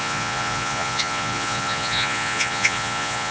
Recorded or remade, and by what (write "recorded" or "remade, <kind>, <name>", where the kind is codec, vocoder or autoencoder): remade, vocoder, Vocos